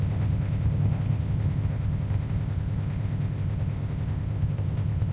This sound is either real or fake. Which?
fake